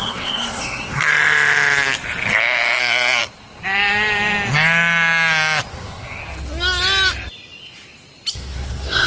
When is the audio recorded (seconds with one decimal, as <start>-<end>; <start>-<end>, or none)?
1.1-2.8; 3.2-5.7; 6.2-8.3